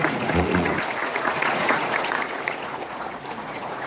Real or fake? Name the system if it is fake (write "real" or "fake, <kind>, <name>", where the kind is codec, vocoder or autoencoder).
fake, vocoder, Vocos